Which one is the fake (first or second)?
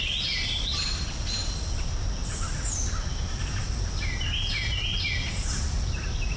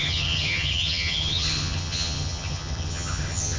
second